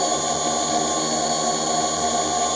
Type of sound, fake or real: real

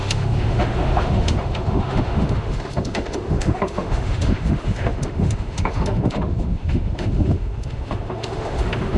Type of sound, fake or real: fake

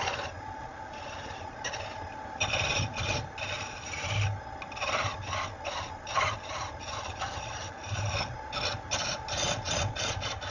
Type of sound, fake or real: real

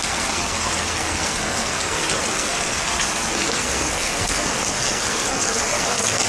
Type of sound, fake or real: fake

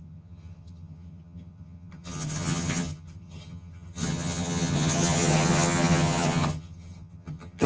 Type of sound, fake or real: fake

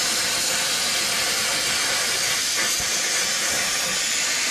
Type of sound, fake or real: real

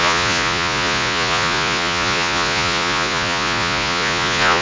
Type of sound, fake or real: fake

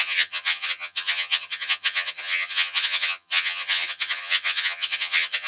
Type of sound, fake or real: fake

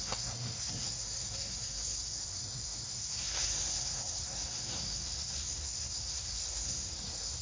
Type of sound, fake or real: fake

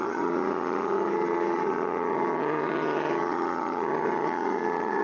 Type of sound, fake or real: fake